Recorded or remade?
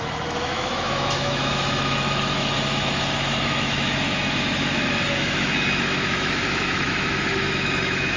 remade